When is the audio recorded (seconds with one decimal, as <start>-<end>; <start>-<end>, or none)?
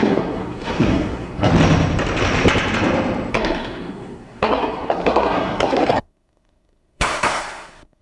1.5-3.3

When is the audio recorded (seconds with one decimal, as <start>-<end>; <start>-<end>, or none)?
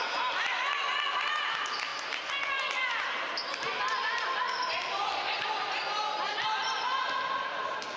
0.0-8.0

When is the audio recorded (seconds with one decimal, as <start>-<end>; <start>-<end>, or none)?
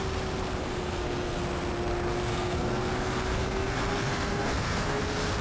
0.0-0.6; 1.4-2.3; 5.0-5.4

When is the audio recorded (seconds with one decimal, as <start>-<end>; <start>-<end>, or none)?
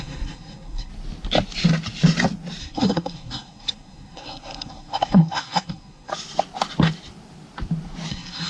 0.9-2.6; 6.1-8.1